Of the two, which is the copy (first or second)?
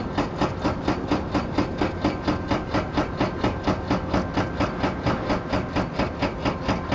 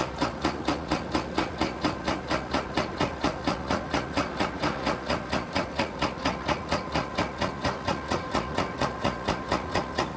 second